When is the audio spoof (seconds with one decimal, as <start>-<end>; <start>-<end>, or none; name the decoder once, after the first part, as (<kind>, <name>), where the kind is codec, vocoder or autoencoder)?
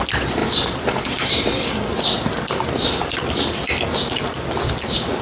0.4-3.5 (vocoder, BigVGAN v2)